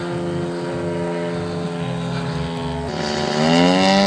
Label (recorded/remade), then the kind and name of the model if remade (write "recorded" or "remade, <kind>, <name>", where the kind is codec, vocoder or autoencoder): recorded